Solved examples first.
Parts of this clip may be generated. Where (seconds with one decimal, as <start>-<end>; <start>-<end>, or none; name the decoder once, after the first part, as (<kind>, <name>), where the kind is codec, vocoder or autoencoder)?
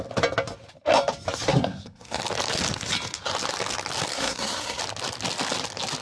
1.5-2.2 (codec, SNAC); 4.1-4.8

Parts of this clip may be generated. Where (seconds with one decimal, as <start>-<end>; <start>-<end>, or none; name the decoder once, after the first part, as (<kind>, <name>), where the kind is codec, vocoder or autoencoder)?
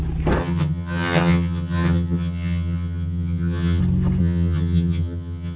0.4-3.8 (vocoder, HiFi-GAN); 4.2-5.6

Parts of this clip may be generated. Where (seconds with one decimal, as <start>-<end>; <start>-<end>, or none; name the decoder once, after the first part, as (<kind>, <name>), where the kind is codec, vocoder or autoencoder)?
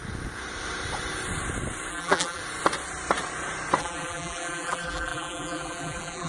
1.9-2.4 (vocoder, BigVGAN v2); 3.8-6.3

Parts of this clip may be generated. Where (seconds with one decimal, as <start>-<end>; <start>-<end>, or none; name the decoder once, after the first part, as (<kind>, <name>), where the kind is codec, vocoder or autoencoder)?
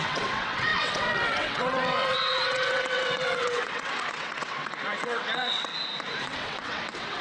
0.0-5.7 (vocoder, WaveNeXt); 6.2-7.2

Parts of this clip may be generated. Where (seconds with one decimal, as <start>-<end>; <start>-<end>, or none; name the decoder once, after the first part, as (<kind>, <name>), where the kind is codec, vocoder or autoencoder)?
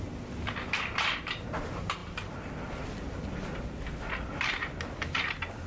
none